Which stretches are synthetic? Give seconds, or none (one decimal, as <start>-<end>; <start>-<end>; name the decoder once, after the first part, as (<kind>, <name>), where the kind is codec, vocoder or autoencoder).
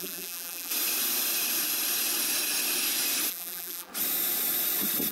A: 0.0-0.7 (vocoder, BigVGAN v2); 3.3-3.9